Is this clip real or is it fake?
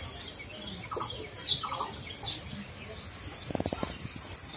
real